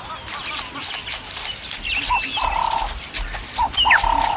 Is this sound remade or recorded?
recorded